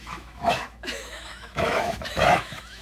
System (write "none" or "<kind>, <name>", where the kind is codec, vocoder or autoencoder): autoencoder, DAC-VAE